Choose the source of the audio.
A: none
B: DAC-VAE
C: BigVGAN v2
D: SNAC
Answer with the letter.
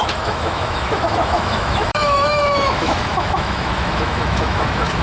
B